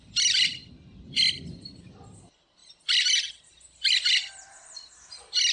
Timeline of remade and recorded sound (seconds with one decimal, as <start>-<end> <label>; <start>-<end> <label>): 0.0-5.5 recorded